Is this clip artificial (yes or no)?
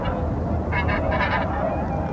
no